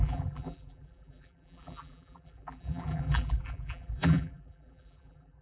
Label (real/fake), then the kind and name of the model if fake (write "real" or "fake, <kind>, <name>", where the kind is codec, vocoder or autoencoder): fake, vocoder, BigVGAN v2